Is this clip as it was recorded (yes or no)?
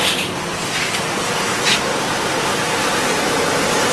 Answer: yes